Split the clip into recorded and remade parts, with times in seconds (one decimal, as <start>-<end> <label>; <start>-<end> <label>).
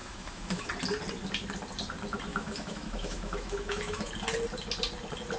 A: 0.0-0.7 remade; 0.7-2.3 recorded; 2.3-4.1 remade; 4.1-5.4 recorded